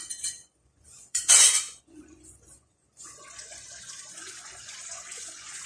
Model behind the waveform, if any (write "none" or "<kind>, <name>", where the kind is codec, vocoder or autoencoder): vocoder, Vocos